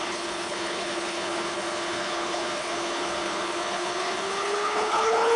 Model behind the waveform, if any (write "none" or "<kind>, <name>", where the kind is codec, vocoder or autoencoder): codec, HILCodec